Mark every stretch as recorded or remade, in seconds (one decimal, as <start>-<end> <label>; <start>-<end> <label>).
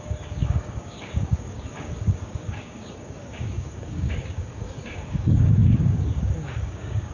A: 0.0-7.1 remade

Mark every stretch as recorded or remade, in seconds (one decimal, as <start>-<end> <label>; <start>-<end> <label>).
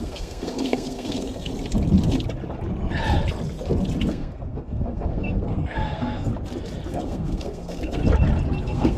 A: 0.0-1.5 remade; 1.5-4.1 recorded; 4.1-6.3 remade; 6.3-6.9 recorded; 6.9-8.0 remade; 8.0-8.6 recorded; 8.6-9.0 remade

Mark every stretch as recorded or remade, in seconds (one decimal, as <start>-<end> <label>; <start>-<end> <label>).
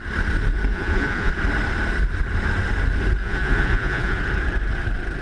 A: 0.0-0.7 recorded; 0.7-1.3 remade; 1.3-3.2 recorded; 3.2-4.2 remade; 4.2-5.2 recorded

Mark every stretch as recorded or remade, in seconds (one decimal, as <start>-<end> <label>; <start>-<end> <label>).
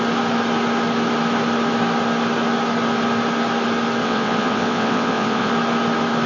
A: 0.0-4.0 recorded; 4.0-5.5 remade; 5.5-6.3 recorded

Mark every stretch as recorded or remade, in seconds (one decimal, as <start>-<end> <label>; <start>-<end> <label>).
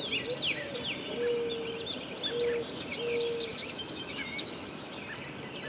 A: 0.0-3.5 recorded; 3.5-4.9 remade; 4.9-5.7 recorded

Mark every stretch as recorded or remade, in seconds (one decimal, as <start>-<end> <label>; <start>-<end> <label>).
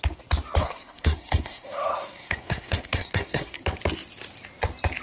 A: 0.0-0.6 recorded; 0.6-3.6 remade; 3.6-5.0 recorded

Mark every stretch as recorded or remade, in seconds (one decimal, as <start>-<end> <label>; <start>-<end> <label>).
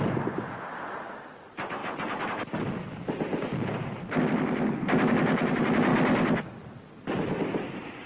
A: 0.0-8.1 recorded